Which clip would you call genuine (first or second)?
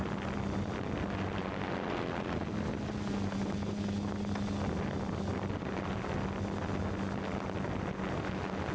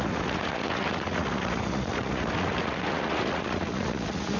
first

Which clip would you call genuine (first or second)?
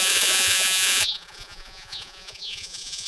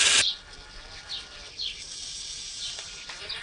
second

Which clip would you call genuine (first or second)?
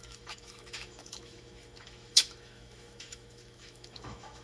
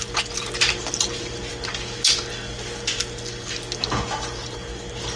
second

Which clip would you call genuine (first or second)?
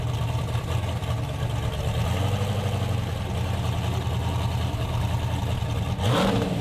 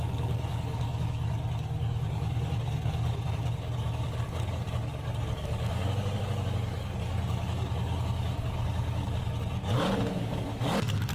first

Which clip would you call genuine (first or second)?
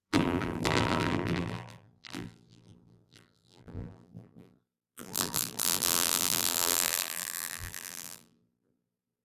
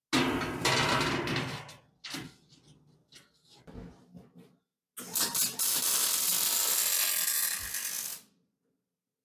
second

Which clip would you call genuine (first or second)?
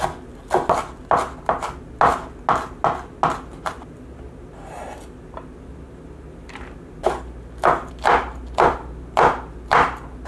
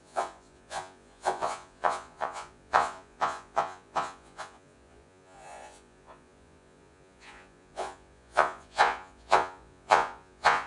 first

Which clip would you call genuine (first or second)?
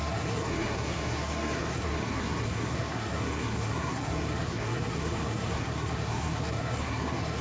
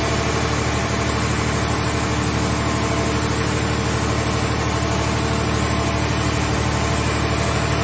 second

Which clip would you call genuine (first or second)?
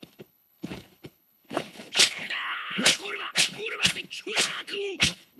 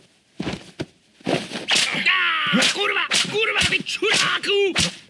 second